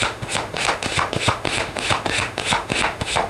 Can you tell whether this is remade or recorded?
remade